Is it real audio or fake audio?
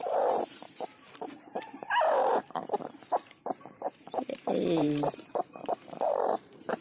fake